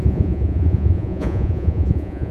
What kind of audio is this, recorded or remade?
remade